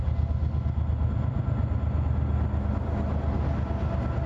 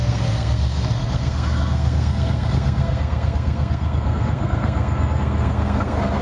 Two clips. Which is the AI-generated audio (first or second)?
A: second